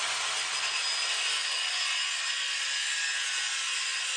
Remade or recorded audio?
recorded